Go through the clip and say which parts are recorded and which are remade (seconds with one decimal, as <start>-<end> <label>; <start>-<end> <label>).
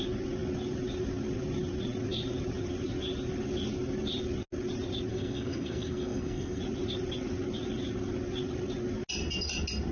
0.0-5.1 recorded; 5.1-6.6 remade; 6.6-9.9 recorded